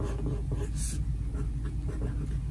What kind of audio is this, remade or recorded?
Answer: recorded